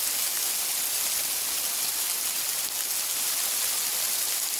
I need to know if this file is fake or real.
real